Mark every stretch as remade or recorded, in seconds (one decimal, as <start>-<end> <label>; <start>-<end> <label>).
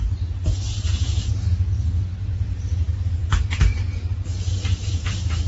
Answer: 0.0-0.7 recorded; 0.7-1.3 remade; 1.3-5.5 recorded